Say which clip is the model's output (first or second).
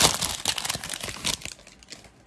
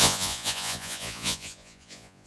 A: second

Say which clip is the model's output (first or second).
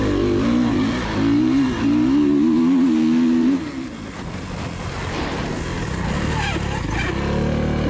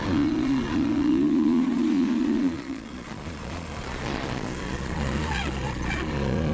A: second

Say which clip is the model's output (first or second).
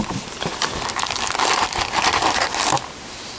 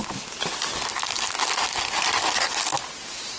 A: first